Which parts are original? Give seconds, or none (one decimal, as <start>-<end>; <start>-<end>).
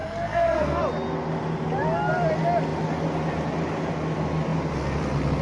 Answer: 0.8-5.4